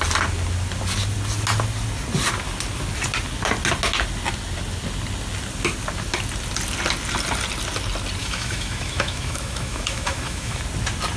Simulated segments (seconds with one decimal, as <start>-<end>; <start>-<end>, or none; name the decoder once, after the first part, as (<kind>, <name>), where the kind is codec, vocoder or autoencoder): 8.2-10.6 (autoencoder, DAC-VAE)

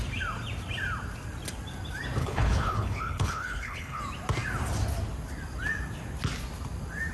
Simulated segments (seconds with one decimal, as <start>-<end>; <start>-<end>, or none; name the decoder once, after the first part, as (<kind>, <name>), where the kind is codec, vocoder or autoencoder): 2.2-4.0 (codec, HILCodec)

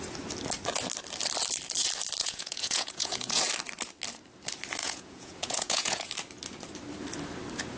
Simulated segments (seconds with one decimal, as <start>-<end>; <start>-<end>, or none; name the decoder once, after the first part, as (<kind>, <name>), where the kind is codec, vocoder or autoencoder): 2.2-3.4 (vocoder, Vocos); 4.8-6.1

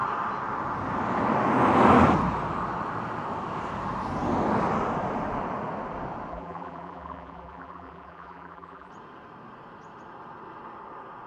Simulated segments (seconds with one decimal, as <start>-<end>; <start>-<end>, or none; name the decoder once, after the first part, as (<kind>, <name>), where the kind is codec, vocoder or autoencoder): 6.3-8.9 (vocoder, BigVGAN v2)

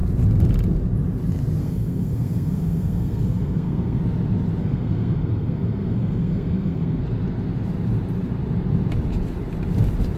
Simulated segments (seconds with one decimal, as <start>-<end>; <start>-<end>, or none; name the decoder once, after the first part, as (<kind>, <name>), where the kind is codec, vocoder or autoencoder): 1.6-4.0 (codec, SNAC); 4.6-7.0